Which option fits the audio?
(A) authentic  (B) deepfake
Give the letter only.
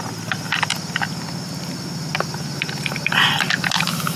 A